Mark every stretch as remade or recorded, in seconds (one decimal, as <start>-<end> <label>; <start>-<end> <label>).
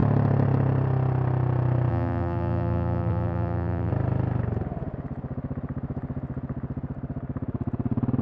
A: 0.0-1.9 recorded; 1.9-3.9 remade; 3.9-8.2 recorded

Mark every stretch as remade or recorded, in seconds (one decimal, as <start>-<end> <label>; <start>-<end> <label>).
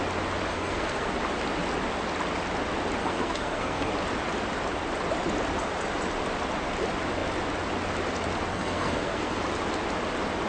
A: 0.0-0.5 recorded; 0.5-1.1 remade; 1.1-3.0 recorded; 3.0-3.9 remade; 3.9-8.5 recorded; 8.5-9.4 remade; 9.4-10.5 recorded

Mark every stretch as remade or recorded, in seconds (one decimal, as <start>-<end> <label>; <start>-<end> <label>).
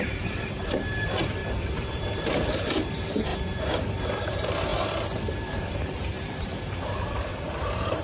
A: 0.0-1.4 remade; 1.4-1.9 recorded; 1.9-8.0 remade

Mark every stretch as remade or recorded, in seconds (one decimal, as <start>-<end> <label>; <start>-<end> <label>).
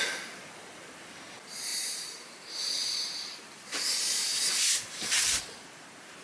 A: 0.0-1.7 recorded; 1.7-5.4 remade; 5.4-6.2 recorded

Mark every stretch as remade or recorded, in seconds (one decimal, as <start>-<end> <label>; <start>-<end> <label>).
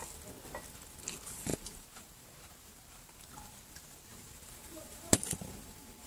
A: 0.0-1.5 recorded; 1.5-3.2 remade; 3.2-4.1 recorded; 4.1-6.1 remade